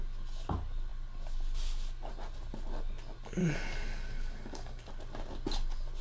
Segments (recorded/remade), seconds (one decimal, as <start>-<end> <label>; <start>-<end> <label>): 0.0-3.4 recorded; 3.4-4.9 remade; 4.9-6.0 recorded